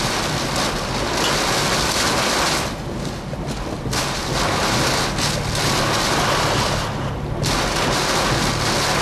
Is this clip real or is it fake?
real